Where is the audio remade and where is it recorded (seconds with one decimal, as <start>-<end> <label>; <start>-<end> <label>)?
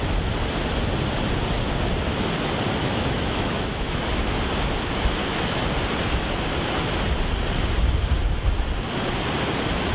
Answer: 0.0-2.8 recorded; 2.8-4.0 remade; 4.0-5.2 recorded; 5.2-5.8 remade; 5.8-9.9 recorded